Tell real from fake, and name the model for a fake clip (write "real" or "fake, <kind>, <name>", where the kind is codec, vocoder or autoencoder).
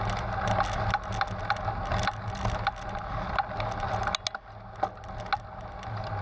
real